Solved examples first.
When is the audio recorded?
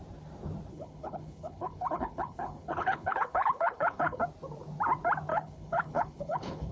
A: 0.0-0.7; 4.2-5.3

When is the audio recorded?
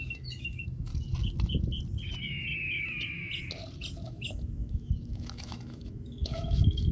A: 0.9-4.0